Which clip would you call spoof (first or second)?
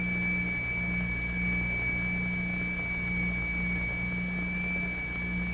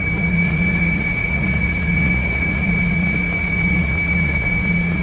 second